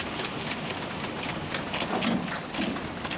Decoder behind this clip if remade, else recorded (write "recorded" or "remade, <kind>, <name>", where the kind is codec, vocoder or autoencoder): recorded